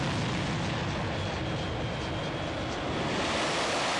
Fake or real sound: real